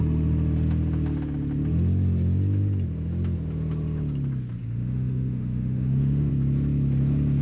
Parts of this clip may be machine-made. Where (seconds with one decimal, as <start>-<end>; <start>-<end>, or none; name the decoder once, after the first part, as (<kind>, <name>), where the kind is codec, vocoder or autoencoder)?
4.6-6.3 (autoencoder, DAC-VAE)